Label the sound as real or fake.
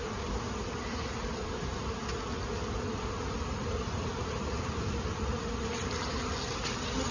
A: real